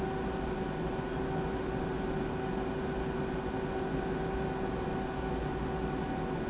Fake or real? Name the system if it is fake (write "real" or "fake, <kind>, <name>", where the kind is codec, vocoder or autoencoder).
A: real